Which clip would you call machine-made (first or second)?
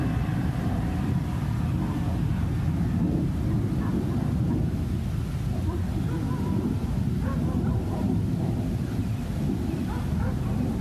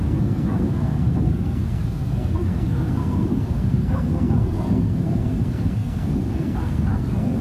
second